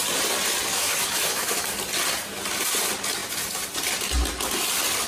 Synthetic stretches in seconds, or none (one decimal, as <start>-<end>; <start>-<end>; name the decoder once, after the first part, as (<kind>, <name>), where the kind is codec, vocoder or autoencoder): 0.7-1.7 (autoencoder, DAC-VAE)